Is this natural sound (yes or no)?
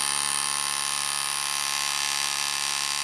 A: yes